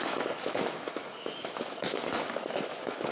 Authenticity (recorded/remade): remade